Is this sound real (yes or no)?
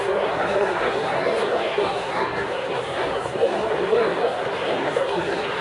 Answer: no